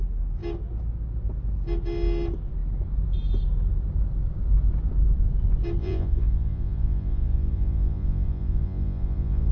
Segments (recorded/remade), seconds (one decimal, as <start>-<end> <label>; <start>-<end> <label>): 0.0-5.8 recorded; 5.8-9.5 remade